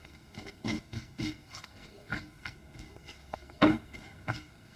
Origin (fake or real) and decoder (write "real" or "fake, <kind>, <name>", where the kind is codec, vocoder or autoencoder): fake, codec, SNAC